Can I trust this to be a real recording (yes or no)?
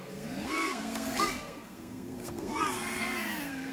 no